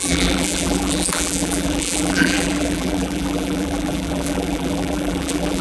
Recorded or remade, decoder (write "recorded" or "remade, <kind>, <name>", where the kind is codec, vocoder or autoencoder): remade, vocoder, BigVGAN v2